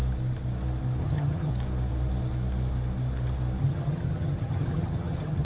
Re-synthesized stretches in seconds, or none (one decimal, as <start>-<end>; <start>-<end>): 1.0-1.5; 3.6-5.4